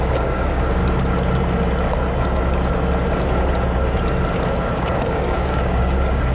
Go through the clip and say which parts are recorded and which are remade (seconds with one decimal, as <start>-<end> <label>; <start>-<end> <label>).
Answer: 0.0-0.8 remade; 0.8-4.6 recorded; 4.6-6.3 remade